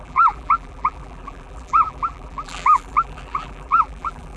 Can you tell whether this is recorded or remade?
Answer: remade